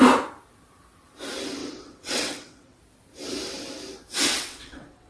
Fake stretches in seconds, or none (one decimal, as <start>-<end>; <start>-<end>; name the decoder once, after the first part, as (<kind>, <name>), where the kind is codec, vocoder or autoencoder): 1.6-2.8 (vocoder, WaveNeXt); 4.3-5.1